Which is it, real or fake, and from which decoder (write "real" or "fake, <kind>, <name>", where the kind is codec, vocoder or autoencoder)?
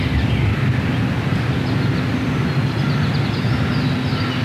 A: real